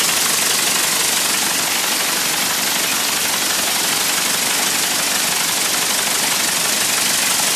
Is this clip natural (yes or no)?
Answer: yes